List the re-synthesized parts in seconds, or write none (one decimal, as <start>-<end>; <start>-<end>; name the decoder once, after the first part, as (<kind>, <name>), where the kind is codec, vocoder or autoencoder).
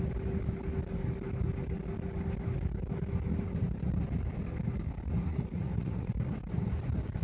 5.3-6.1 (vocoder, Vocos)